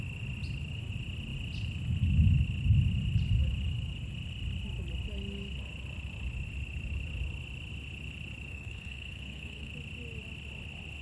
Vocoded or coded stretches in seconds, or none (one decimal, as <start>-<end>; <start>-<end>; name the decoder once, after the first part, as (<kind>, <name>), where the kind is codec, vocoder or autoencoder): 8.5-9.7 (codec, SNAC)